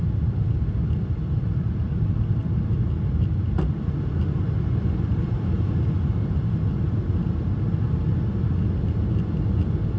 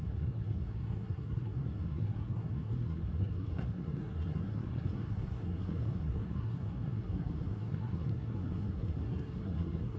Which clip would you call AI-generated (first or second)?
second